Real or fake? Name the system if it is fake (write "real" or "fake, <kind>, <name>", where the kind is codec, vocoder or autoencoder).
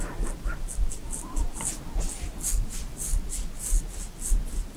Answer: real